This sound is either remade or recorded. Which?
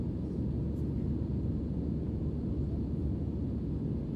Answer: recorded